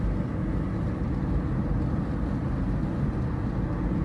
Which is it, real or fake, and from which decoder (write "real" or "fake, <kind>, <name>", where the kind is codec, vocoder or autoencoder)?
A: real